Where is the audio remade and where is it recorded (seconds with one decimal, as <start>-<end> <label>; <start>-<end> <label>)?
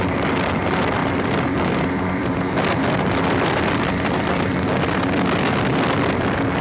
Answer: 0.0-1.0 recorded; 1.0-5.0 remade; 5.0-6.6 recorded